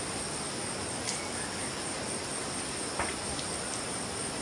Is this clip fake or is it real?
real